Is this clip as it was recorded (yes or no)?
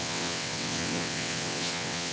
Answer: no